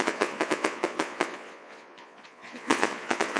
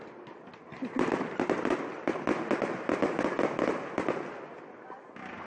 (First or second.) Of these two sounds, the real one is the second